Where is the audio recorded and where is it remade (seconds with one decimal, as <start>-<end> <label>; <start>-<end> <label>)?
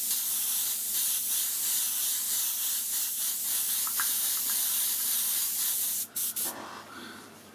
0.0-1.5 remade; 1.5-2.0 recorded; 2.0-7.5 remade